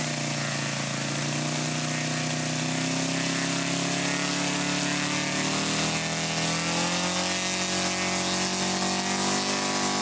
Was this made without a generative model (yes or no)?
yes